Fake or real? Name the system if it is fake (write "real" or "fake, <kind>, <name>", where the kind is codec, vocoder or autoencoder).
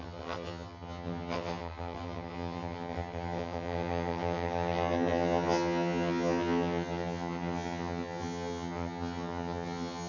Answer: fake, vocoder, HiFi-GAN